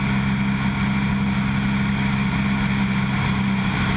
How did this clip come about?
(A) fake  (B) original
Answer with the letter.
B